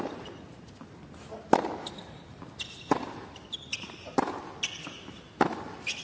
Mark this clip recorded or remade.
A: recorded